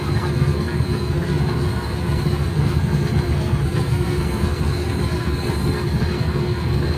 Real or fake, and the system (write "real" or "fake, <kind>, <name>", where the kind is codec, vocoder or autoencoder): fake, codec, SNAC